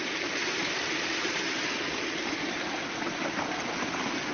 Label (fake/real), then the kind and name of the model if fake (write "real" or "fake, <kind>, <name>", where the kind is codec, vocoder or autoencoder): real